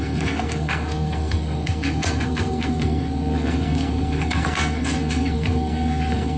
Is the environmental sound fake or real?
fake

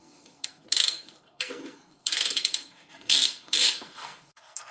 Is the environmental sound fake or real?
fake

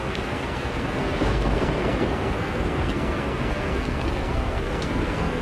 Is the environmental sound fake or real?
fake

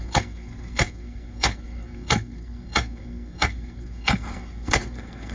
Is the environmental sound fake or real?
fake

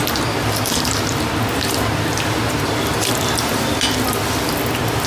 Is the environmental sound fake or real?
real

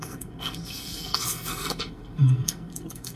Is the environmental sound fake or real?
fake